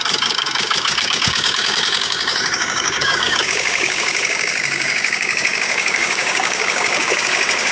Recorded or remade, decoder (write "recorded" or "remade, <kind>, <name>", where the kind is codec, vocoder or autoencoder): remade, codec, DAC